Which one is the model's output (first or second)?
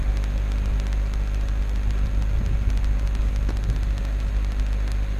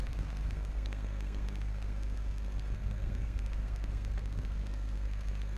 second